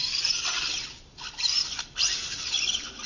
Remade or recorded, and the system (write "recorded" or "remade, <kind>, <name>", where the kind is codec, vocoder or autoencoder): recorded